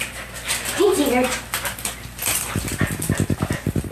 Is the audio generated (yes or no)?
yes